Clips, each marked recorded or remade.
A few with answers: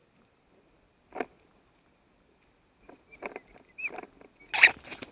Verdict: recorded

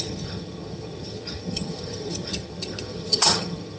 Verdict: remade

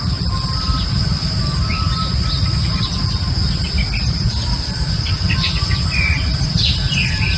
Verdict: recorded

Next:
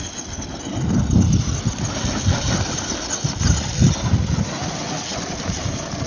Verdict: recorded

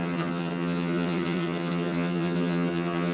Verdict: remade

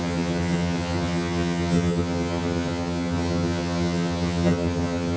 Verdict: remade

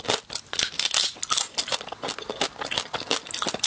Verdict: recorded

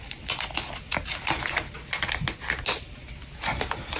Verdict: recorded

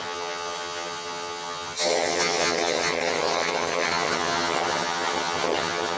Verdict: remade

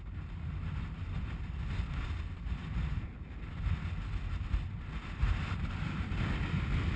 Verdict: recorded